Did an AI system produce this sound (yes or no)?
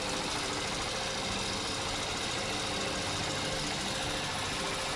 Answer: no